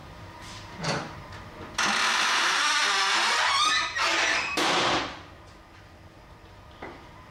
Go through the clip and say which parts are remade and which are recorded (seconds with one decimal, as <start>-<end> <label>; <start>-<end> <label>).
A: 0.0-1.3 remade; 1.3-2.1 recorded; 2.1-2.6 remade; 2.6-4.1 recorded; 4.1-5.0 remade; 5.0-7.3 recorded